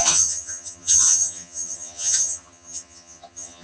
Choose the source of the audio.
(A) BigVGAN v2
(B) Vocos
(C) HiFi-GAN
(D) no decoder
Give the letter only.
C